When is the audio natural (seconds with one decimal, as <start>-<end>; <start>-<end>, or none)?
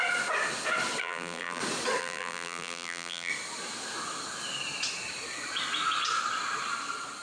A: 0.0-1.0; 1.6-2.0; 3.3-7.2